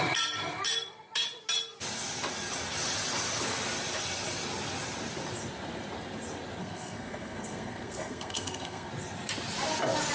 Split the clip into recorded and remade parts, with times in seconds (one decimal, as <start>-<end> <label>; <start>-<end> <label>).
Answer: 0.0-6.6 recorded; 6.6-8.9 remade; 8.9-10.1 recorded